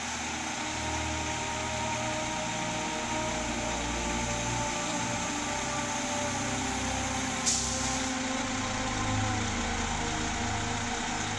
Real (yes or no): yes